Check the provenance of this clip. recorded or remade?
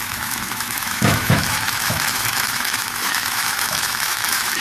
remade